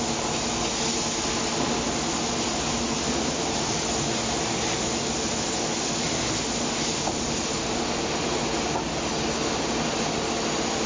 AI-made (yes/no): no